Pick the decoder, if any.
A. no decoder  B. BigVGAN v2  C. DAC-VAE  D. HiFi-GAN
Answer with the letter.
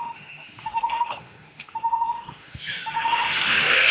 C